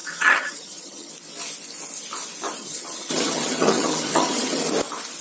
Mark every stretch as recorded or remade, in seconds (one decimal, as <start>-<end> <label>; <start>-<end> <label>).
0.0-1.1 remade; 1.1-2.6 recorded; 2.6-4.6 remade; 4.6-5.2 recorded